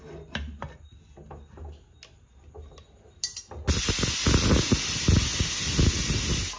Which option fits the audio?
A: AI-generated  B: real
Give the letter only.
B